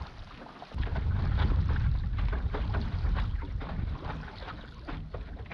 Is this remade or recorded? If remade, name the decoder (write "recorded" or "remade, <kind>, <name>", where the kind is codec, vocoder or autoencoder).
recorded